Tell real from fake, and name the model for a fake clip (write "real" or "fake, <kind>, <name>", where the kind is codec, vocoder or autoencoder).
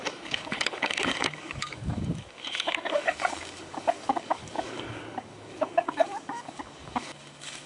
fake, codec, DAC